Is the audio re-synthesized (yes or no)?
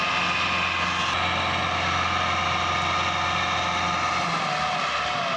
no